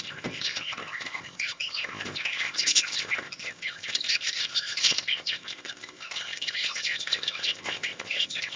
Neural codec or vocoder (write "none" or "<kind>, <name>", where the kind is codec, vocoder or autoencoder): codec, ZipCodec